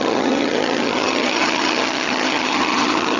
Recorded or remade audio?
remade